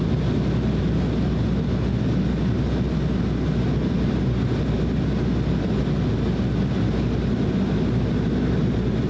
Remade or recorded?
recorded